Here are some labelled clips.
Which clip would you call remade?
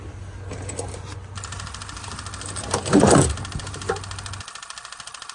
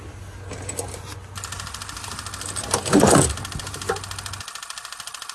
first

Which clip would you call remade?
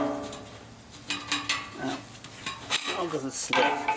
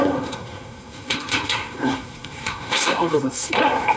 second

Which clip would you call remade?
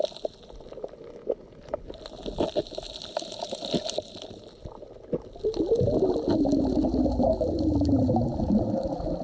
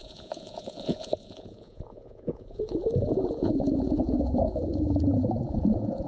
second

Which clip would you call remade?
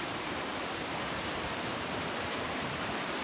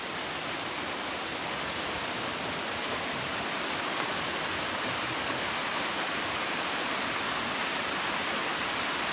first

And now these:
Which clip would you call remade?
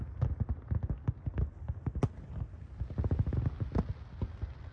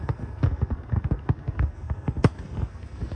second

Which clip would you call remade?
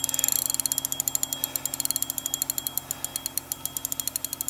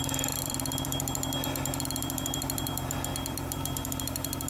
second